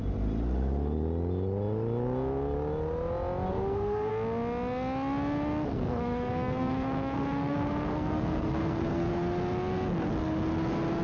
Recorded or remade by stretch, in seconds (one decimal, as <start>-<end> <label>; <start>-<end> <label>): 0.0-3.5 recorded; 3.5-4.1 remade; 4.1-5.7 recorded; 5.7-9.1 remade; 9.1-11.0 recorded